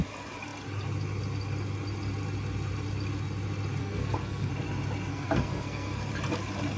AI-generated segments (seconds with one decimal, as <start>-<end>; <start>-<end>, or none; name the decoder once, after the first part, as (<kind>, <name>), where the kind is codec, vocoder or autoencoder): 3.8-4.5 (codec, SNAC); 5.1-6.1